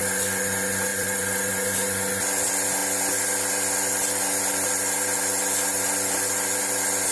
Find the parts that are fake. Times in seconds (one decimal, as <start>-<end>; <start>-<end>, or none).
0.9-1.5